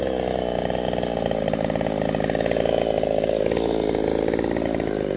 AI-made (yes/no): no